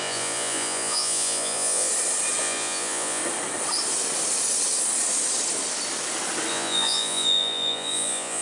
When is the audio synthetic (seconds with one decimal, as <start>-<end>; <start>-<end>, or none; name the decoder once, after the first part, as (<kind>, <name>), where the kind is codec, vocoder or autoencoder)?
0.0-1.9 (vocoder, Vocos); 2.4-3.2; 6.5-8.4